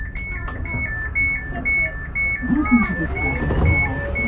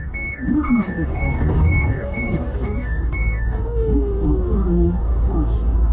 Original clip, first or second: first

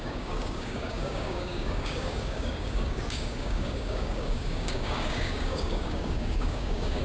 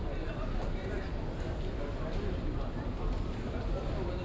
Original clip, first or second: second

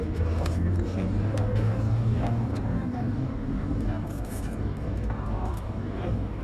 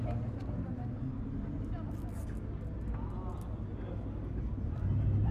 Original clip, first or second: second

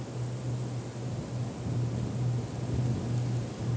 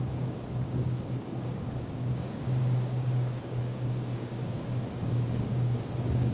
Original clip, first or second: first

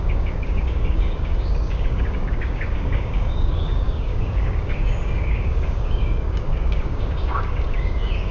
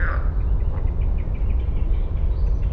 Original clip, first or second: second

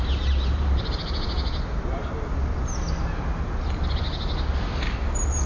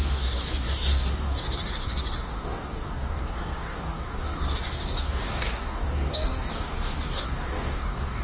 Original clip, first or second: first